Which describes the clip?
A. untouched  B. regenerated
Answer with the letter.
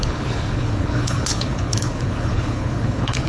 B